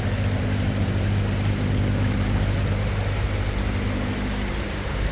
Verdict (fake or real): real